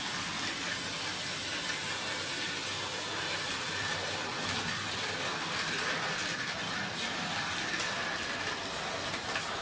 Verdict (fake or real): real